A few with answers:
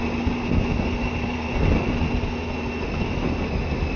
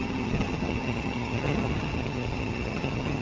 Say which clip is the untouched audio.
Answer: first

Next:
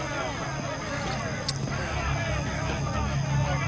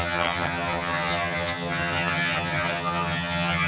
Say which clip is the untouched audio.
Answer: first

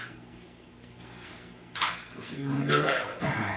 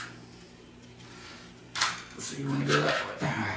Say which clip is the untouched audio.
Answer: second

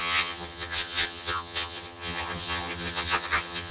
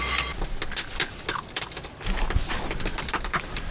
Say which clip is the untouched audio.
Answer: second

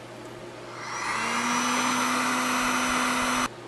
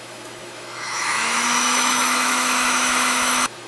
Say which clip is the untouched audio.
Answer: first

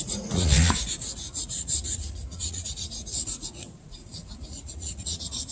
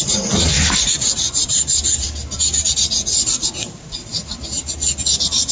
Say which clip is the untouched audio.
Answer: second